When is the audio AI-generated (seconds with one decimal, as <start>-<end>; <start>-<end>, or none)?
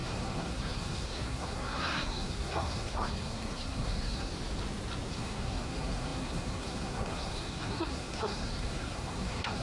0.0-4.3; 5.1-9.6